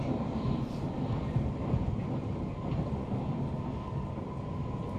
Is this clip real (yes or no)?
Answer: yes